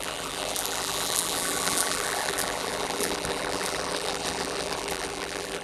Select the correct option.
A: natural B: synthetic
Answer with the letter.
B